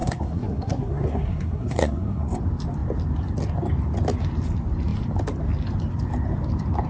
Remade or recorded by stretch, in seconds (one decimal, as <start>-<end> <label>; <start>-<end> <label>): 0.0-2.4 remade; 2.4-6.9 recorded